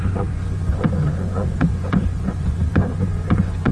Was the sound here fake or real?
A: fake